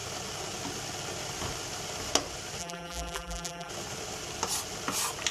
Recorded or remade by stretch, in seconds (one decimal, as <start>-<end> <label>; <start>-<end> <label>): 0.0-2.6 recorded; 2.6-3.7 remade; 3.7-5.3 recorded